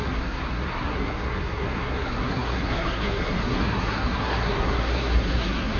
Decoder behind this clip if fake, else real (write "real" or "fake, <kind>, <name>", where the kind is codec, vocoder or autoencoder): fake, codec, SNAC